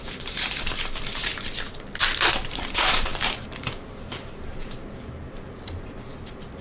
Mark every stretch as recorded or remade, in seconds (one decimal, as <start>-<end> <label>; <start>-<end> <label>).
0.0-1.3 remade; 1.3-2.3 recorded; 2.3-6.6 remade

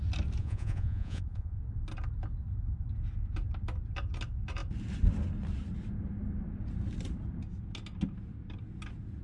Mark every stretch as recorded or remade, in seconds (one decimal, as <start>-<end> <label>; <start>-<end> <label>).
0.0-0.4 recorded; 0.4-1.6 remade; 1.6-9.2 recorded

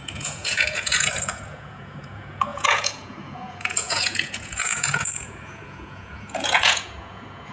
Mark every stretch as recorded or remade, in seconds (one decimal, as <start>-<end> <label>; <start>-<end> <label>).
0.0-7.5 remade

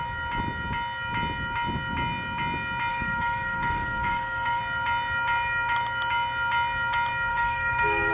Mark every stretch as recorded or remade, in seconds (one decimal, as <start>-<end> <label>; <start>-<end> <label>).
0.0-2.9 recorded; 2.9-4.6 remade; 4.6-7.3 recorded; 7.3-8.1 remade

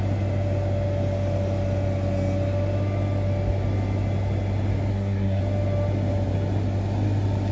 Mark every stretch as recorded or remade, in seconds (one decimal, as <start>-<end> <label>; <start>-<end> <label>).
0.0-4.9 recorded; 4.9-5.4 remade; 5.4-7.5 recorded

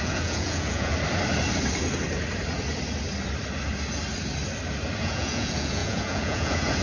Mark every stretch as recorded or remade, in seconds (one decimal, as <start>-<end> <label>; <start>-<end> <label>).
0.0-0.9 remade; 0.9-5.0 recorded; 5.0-6.8 remade

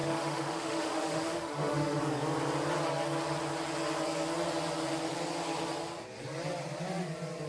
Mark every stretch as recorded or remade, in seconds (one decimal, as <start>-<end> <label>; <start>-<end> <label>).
0.0-2.0 remade; 2.0-7.5 recorded